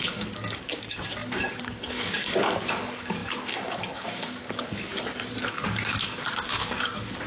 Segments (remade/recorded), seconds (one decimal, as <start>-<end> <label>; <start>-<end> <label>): 0.0-4.9 remade; 4.9-5.5 recorded; 5.5-7.3 remade